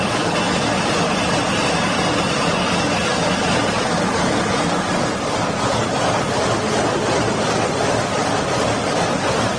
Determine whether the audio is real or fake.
real